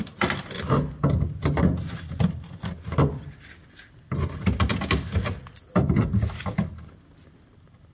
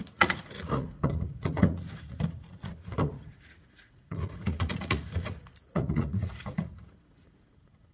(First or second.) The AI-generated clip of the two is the second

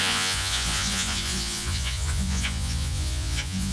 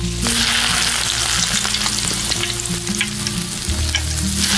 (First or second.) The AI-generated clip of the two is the first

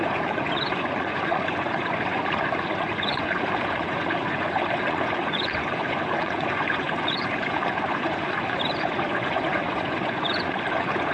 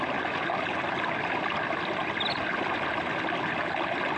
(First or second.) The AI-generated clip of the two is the first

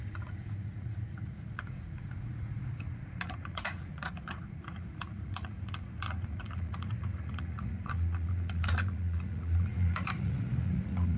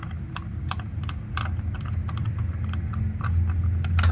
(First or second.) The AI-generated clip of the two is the first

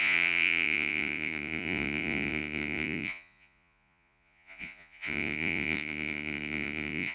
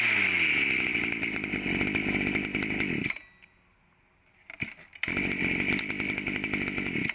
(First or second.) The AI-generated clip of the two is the first